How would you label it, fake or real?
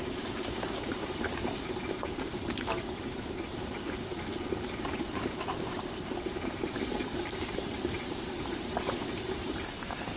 fake